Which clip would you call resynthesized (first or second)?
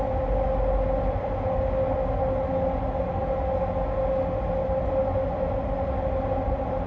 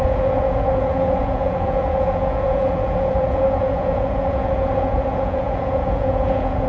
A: second